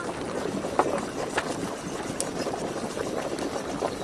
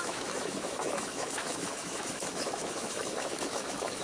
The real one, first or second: first